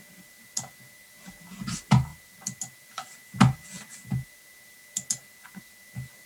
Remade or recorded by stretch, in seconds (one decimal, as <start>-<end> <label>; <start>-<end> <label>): 0.0-6.3 recorded